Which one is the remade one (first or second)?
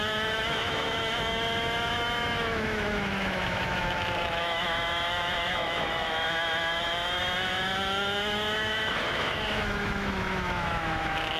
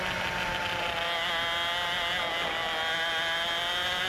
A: first